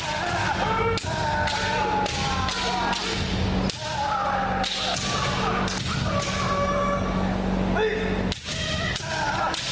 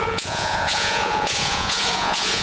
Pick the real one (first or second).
first